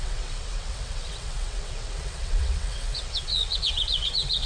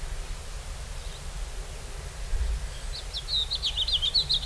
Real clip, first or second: second